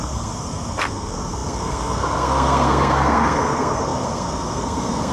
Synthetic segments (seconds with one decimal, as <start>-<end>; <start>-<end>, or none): 0.0-5.1